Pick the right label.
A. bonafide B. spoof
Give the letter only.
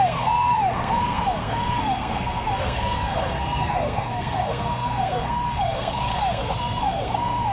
B